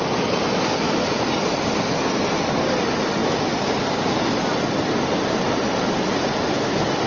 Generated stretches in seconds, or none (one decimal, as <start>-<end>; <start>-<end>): none